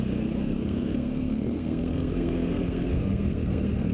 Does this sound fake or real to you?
fake